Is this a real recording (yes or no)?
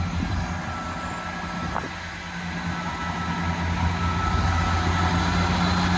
yes